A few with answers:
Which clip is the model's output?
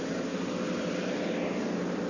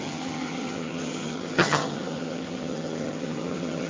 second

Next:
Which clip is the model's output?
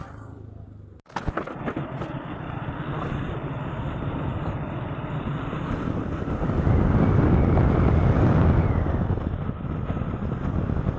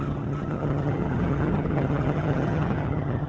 second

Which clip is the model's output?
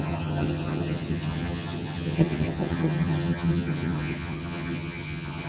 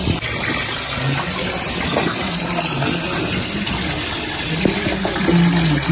first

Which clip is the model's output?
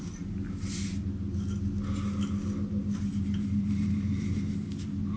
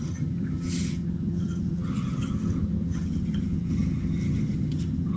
second